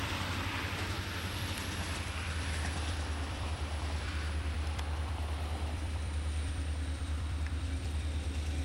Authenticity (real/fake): fake